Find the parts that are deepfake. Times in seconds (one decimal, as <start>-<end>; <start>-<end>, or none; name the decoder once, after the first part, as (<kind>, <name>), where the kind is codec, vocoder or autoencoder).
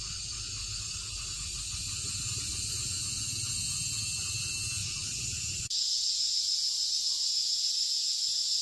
2.5-3.2 (vocoder, Vocos); 4.8-8.6